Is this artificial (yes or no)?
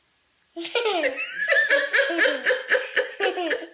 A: no